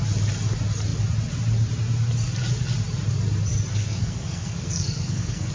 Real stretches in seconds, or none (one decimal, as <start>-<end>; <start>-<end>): 0.0-3.7